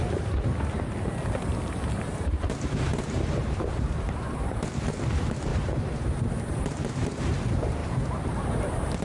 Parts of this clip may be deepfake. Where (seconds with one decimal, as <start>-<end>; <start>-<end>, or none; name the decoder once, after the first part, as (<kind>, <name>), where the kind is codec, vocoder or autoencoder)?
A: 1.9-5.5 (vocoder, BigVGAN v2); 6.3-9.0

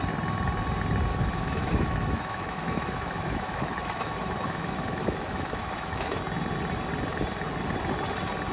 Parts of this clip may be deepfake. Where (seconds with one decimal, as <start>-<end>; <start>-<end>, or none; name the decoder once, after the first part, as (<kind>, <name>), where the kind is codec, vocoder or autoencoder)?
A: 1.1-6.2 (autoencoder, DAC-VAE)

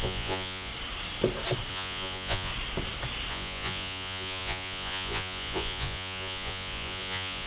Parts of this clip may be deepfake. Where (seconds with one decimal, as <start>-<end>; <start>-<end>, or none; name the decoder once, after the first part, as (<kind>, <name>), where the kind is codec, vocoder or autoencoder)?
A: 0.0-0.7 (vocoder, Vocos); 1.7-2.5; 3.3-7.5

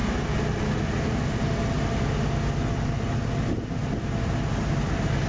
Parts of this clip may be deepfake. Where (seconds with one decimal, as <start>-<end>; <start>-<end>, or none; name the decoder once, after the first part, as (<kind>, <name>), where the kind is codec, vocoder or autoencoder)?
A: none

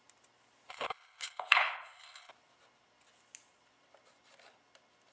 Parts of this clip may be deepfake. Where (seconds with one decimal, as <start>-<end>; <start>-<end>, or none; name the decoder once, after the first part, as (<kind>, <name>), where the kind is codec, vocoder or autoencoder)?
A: 0.7-2.3 (codec, HILCodec)